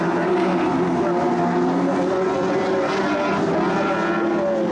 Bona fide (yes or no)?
yes